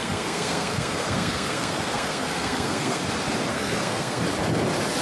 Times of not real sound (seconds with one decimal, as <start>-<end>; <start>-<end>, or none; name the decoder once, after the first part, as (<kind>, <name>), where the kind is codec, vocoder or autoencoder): 0.0-3.0 (codec, SNAC); 3.5-4.2